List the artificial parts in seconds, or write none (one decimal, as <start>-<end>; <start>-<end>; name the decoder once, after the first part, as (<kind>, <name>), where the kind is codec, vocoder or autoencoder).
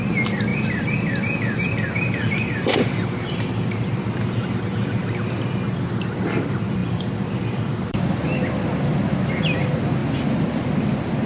0.5-5.5 (vocoder, BigVGAN v2); 6.8-8.2; 10.0-10.8